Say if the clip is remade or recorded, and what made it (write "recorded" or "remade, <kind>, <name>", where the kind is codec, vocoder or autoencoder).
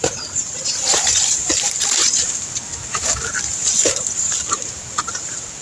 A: remade, vocoder, BigVGAN v2